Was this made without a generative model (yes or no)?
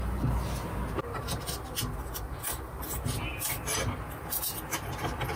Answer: yes